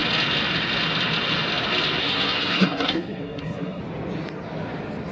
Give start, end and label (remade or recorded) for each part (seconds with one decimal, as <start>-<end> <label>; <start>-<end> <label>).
0.0-2.0 recorded; 2.0-3.8 remade; 3.8-5.1 recorded